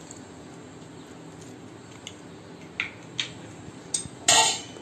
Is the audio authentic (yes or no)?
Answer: yes